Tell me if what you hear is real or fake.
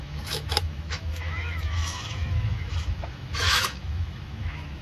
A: fake